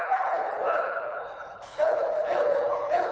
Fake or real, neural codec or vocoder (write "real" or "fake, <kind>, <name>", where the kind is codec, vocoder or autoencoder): fake, codec, HILCodec